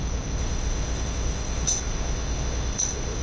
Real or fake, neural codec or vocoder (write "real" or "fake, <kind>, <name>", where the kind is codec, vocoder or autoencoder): fake, codec, ZipCodec